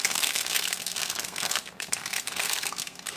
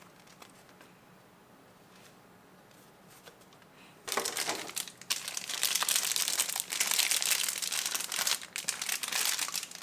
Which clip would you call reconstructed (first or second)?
first